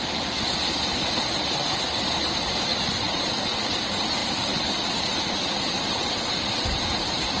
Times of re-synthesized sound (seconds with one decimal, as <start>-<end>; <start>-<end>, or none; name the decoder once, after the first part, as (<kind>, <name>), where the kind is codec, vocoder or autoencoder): 2.7-3.2 (vocoder, BigVGAN v2); 4.2-6.5